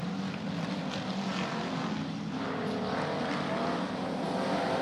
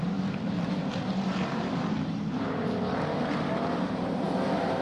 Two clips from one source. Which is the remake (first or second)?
second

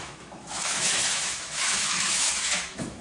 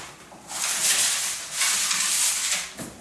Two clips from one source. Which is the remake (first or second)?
first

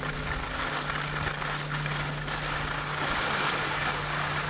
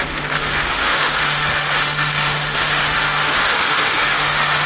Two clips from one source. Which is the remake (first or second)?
second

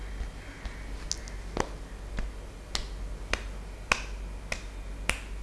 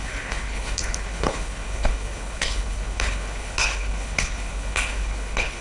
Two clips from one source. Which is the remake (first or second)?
second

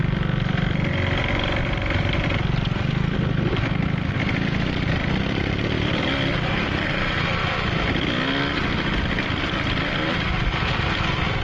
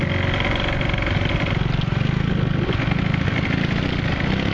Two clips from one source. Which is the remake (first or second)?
first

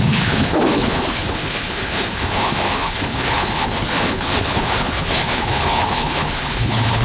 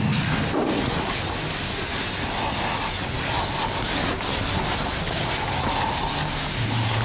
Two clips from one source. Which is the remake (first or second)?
first